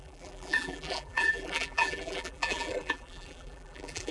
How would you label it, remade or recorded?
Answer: remade